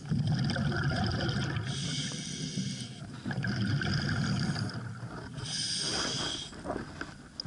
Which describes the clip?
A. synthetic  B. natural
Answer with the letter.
B